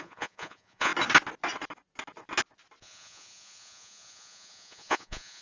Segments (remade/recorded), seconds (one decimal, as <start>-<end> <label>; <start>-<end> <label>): 0.0-0.9 remade; 0.9-2.8 recorded; 2.8-5.4 remade